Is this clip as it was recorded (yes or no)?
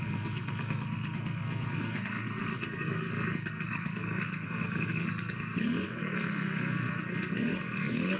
no